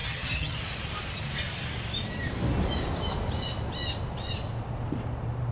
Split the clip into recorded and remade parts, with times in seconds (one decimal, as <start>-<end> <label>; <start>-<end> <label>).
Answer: 0.0-0.6 remade; 0.6-5.5 recorded

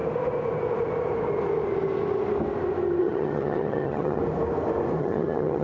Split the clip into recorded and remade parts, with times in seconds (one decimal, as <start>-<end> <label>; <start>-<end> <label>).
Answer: 0.0-3.0 recorded; 3.0-4.2 remade; 4.2-5.0 recorded; 5.0-5.6 remade

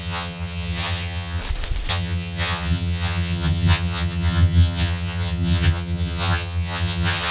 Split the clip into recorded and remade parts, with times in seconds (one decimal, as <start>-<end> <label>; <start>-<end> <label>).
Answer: 0.0-1.4 remade; 1.4-1.9 recorded; 1.9-7.3 remade

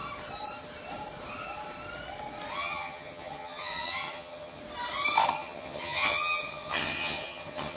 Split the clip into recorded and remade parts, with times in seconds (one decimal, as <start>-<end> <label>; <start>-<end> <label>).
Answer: 0.0-2.5 recorded; 2.5-4.6 remade; 4.6-5.3 recorded; 5.3-7.8 remade

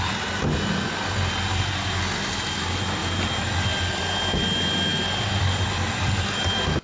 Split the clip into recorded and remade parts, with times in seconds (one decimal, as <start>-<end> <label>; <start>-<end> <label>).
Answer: 0.0-6.8 recorded

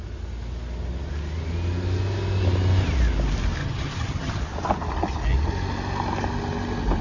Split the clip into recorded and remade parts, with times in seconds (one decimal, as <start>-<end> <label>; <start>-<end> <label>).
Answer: 0.0-3.6 recorded; 3.6-4.4 remade; 4.4-7.0 recorded

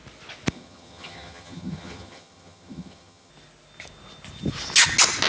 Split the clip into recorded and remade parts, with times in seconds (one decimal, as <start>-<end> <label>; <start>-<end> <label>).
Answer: 0.0-0.5 recorded; 0.5-3.3 remade; 3.3-5.3 recorded

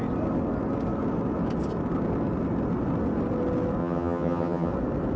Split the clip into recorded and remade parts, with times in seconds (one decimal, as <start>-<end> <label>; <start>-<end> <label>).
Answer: 0.0-3.8 recorded; 3.8-4.7 remade; 4.7-5.2 recorded